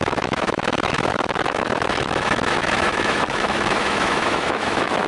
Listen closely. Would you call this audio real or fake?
fake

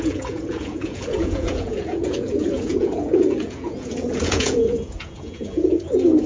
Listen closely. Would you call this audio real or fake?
fake